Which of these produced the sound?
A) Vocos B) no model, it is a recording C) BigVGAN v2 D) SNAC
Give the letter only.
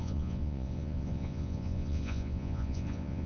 A